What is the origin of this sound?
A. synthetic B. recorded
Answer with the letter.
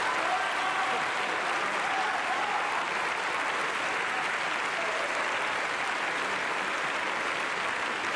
B